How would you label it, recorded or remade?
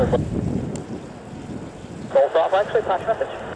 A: recorded